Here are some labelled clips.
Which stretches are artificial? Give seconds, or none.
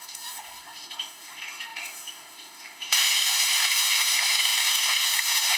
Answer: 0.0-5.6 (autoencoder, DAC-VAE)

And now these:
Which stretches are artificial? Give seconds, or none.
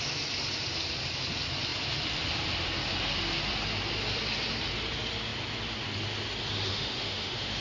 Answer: 6.7-7.6 (autoencoder, DAC-VAE)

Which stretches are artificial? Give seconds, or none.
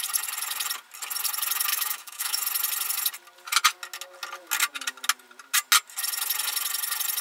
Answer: 1.7-2.4 (autoencoder, DAC-VAE)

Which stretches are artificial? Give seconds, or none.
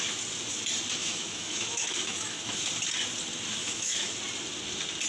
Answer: 1.0-2.7 (autoencoder, DAC-VAE); 3.6-4.2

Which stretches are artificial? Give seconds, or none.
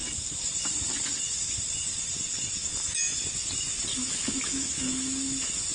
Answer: 2.6-3.2 (autoencoder, DAC-VAE); 3.9-5.7